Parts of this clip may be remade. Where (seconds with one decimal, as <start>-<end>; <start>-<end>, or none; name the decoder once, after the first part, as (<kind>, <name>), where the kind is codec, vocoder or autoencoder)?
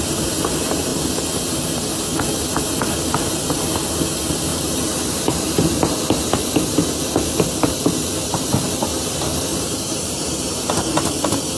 4.5-5.8 (vocoder, BigVGAN v2); 9.5-11.6